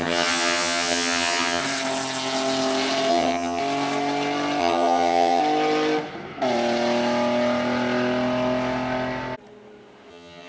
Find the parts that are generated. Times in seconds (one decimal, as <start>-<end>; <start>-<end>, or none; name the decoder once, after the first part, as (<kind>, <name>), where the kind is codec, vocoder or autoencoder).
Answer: 0.0-1.6 (vocoder, HiFi-GAN); 3.1-3.6; 4.6-5.4; 10.1-10.5